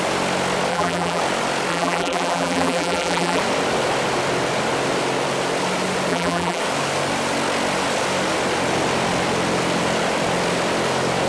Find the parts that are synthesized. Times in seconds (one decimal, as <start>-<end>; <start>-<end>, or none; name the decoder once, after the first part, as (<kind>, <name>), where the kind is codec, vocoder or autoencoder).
0.7-1.2 (vocoder, BigVGAN v2); 1.7-3.4; 6.1-6.6